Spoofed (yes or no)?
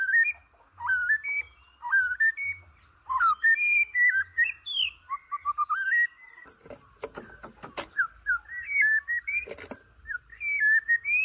no